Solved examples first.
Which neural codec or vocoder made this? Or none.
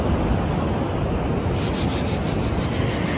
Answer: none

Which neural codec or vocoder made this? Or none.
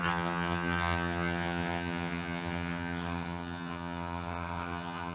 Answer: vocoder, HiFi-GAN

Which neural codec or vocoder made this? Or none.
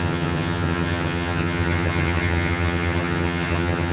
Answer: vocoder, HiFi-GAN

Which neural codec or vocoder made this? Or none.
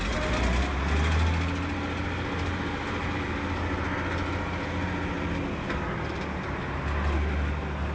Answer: none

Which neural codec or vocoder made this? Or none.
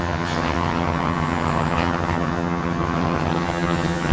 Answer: vocoder, HiFi-GAN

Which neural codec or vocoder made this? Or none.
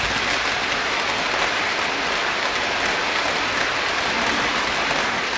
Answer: none